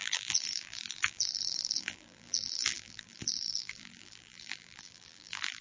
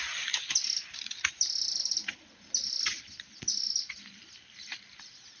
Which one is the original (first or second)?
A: second